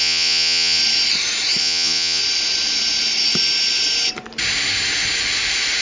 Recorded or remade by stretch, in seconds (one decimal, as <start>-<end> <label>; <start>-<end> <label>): 0.0-0.8 remade; 0.8-1.6 recorded; 1.6-2.2 remade; 2.2-5.8 recorded